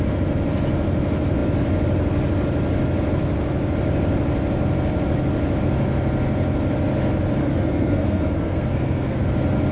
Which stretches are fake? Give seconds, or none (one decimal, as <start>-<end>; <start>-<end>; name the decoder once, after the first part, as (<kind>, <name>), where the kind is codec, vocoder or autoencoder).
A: 7.4-9.2 (codec, SNAC)